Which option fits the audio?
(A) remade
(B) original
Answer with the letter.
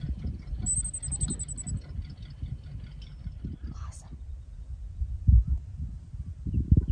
B